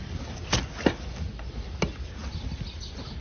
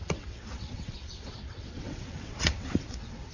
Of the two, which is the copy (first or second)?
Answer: second